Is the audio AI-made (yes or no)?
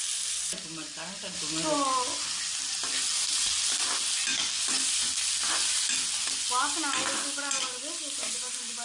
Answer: no